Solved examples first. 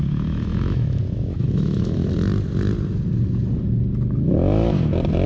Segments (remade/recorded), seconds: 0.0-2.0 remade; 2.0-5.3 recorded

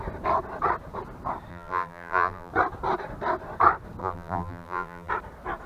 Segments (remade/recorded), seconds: 0.0-1.5 recorded; 1.5-2.5 remade; 2.5-4.0 recorded; 4.0-5.1 remade; 5.1-5.7 recorded

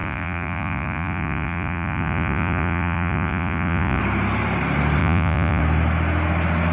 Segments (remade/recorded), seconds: 0.0-4.0 remade; 4.0-5.0 recorded; 5.0-5.6 remade; 5.6-6.7 recorded

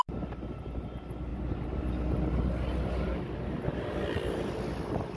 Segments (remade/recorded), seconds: 0.0-5.2 recorded

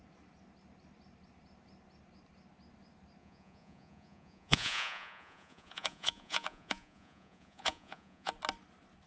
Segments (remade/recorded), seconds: 0.0-3.2 recorded; 3.2-8.3 remade; 8.3-9.1 recorded

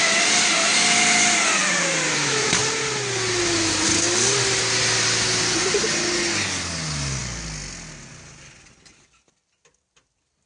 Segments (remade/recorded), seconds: 0.0-1.6 recorded; 1.6-2.5 remade; 2.5-10.5 recorded

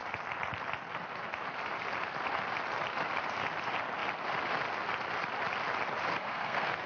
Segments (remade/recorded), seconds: 0.0-6.1 recorded; 6.1-6.9 remade

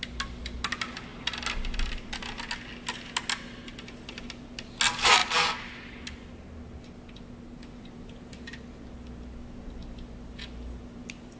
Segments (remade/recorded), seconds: 0.0-11.4 recorded